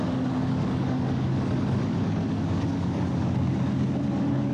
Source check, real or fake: fake